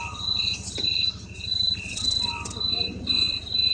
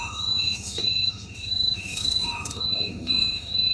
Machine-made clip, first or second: second